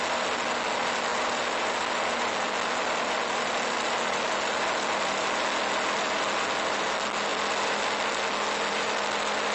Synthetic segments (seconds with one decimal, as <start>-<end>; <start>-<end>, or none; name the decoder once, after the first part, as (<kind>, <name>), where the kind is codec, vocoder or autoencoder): none